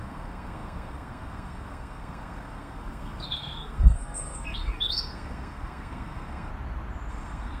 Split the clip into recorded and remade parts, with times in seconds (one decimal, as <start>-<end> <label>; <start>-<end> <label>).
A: 0.0-6.5 remade; 6.5-7.1 recorded; 7.1-7.6 remade